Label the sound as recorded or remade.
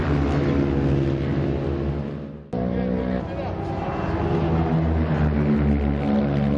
recorded